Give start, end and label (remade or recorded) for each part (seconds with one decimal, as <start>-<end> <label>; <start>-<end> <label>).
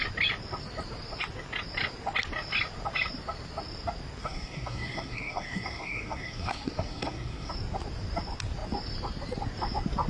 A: 0.0-4.2 recorded; 4.2-7.5 remade; 7.5-10.1 recorded